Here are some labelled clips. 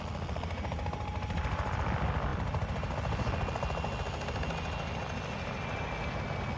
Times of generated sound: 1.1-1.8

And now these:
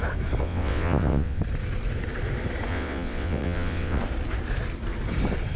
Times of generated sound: 0.4-1.4; 2.7-4.0

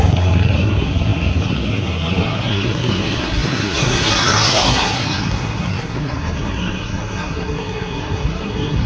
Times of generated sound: 0.0-8.9

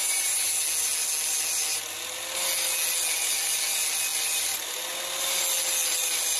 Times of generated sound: 0.0-0.5

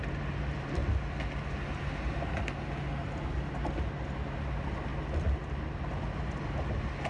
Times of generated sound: none

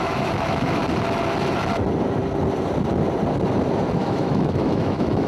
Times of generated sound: 0.0-0.8; 4.0-5.3

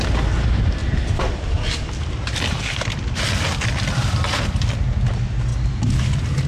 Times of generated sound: 0.8-4.4